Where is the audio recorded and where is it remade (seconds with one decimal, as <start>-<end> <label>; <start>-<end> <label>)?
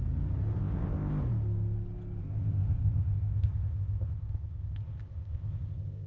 0.0-0.6 recorded; 0.6-1.1 remade; 1.1-2.2 recorded; 2.2-6.1 remade